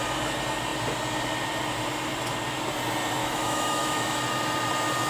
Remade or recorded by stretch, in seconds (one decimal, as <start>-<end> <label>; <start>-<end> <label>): 0.0-3.2 recorded; 3.2-4.2 remade; 4.2-5.1 recorded